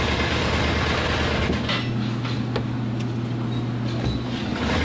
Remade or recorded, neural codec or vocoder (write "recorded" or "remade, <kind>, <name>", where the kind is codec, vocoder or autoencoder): recorded